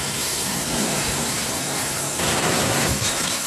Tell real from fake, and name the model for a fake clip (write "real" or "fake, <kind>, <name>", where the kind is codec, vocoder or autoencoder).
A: fake, codec, SNAC